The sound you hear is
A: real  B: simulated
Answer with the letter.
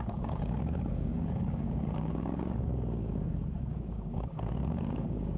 B